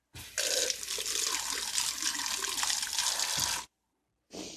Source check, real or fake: real